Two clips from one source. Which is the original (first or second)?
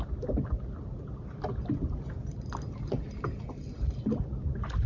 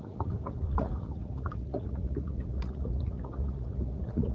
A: first